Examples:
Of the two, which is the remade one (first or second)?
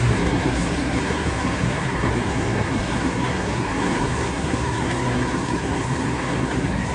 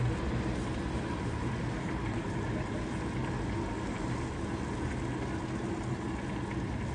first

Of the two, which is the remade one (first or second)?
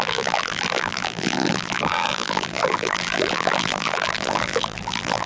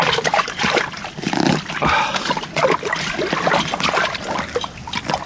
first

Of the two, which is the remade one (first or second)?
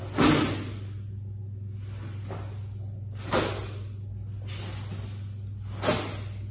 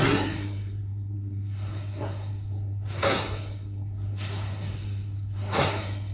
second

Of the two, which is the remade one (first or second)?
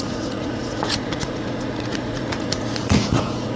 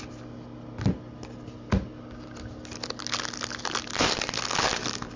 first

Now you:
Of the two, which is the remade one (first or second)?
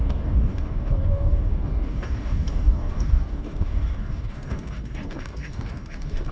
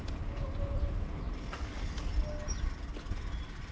first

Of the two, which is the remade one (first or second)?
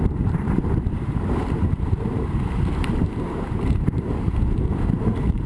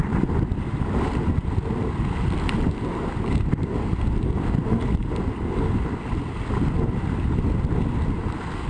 first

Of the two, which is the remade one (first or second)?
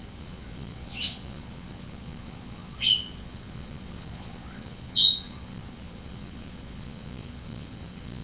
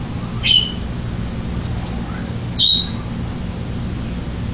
first